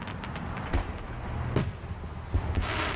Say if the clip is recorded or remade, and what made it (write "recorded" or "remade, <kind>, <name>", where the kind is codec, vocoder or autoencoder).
recorded